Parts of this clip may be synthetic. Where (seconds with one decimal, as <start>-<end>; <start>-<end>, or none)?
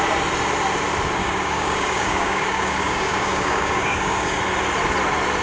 1.2-4.4